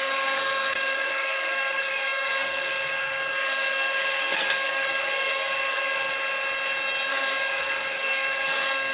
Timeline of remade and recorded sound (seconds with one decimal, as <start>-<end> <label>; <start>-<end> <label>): 0.0-6.1 remade; 6.1-7.1 recorded; 7.1-8.9 remade